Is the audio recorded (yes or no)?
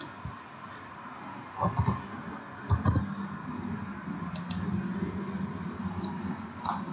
yes